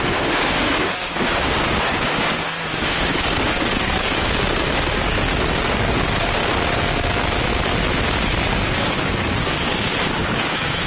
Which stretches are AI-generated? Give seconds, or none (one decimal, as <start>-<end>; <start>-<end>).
0.0-6.4; 8.5-10.9